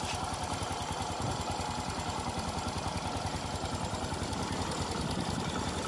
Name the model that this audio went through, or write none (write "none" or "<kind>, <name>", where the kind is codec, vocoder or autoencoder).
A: none